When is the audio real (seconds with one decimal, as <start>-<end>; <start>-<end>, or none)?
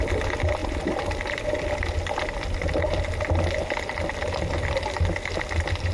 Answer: 0.0-5.9